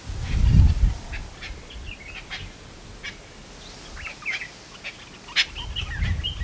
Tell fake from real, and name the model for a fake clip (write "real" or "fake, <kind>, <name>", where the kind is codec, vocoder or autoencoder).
real